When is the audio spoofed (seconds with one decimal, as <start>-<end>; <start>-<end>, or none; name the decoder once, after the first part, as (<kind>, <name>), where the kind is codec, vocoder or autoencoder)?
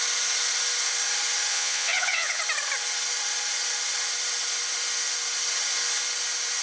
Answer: 1.5-2.4 (vocoder, Vocos)